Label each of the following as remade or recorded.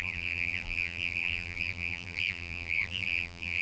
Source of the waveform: remade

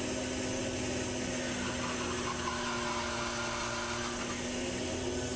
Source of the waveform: recorded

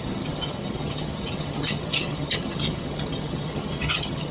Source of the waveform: remade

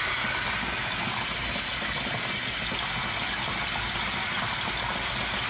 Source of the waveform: recorded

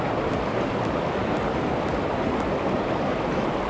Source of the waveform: recorded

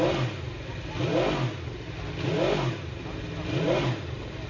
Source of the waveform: recorded